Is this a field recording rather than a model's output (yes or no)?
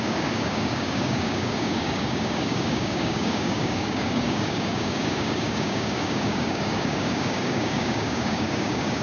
no